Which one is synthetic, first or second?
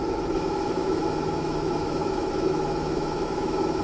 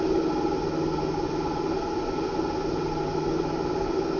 first